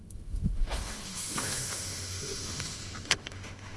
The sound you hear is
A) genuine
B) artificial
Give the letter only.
B